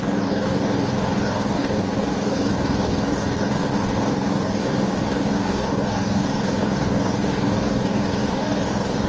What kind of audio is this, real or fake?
fake